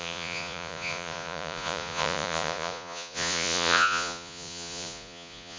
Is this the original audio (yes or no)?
no